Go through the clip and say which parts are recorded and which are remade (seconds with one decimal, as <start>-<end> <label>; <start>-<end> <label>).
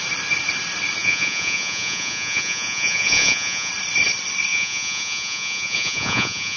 0.0-1.0 recorded; 1.0-3.7 remade; 3.7-4.5 recorded; 4.5-6.6 remade